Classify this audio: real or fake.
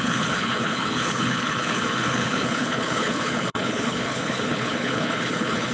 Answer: fake